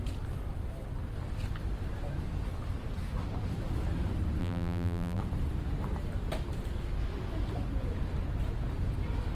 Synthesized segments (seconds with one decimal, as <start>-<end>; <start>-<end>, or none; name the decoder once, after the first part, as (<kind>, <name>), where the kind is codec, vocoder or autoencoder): 4.4-5.2 (vocoder, BigVGAN v2)